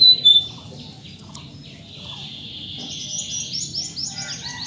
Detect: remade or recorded recorded